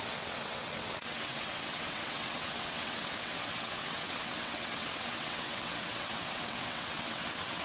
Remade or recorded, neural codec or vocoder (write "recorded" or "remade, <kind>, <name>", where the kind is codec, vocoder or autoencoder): remade, vocoder, WaveNeXt